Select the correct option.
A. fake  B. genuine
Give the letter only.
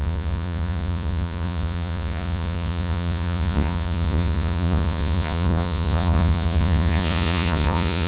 A